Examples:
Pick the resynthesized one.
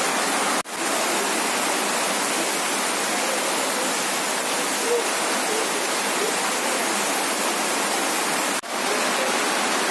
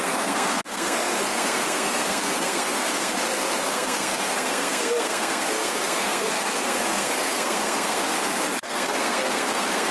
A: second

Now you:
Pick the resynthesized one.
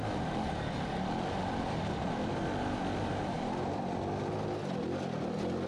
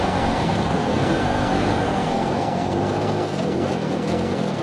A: second